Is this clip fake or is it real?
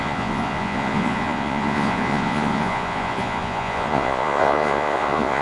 fake